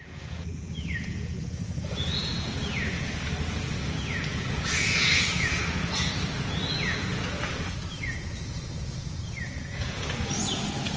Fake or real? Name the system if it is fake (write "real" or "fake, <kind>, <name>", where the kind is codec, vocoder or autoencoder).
fake, vocoder, Vocos